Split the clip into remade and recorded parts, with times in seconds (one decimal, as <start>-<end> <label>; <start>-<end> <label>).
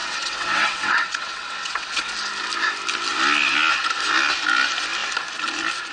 0.0-2.1 remade; 2.1-5.9 recorded